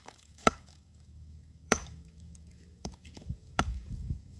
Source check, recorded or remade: remade